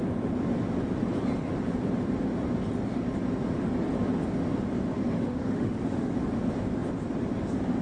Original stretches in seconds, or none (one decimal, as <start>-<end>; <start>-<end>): 0.0-4.9; 6.1-7.8